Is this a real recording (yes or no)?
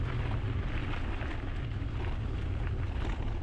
yes